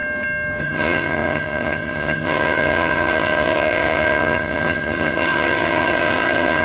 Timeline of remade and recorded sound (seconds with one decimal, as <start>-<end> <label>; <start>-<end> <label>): 0.0-0.6 recorded; 0.6-6.6 remade